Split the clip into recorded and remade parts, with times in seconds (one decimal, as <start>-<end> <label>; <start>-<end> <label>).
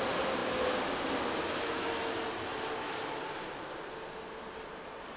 0.0-5.2 recorded